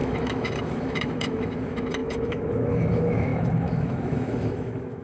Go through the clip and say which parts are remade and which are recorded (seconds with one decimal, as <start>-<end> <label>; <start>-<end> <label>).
0.0-5.0 remade